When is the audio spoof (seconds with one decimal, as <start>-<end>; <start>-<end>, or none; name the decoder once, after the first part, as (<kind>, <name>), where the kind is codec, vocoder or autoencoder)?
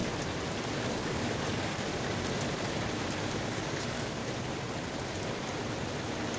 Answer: 0.9-1.9 (codec, DAC); 3.2-4.2